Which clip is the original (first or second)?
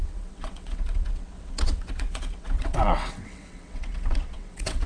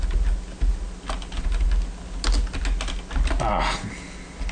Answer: second